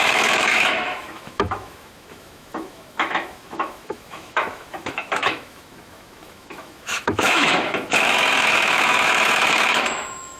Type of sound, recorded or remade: remade